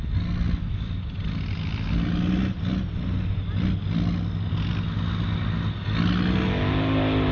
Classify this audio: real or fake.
real